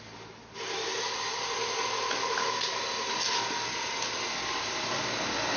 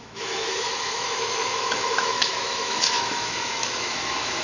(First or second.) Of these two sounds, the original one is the first